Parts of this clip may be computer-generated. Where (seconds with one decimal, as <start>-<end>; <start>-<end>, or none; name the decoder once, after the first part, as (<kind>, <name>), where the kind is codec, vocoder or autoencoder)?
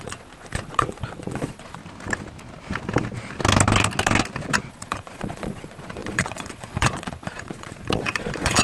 0.0-1.8 (vocoder, Vocos); 4.7-8.6